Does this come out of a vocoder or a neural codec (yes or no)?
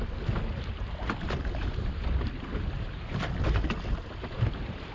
no